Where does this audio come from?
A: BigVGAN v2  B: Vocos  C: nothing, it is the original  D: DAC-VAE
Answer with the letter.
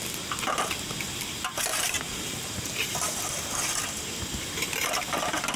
C